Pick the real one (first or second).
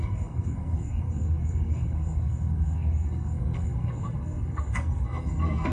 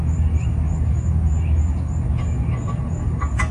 second